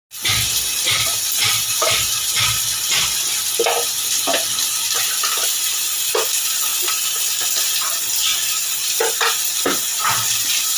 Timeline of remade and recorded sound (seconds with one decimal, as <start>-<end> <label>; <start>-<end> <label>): 0.0-10.8 recorded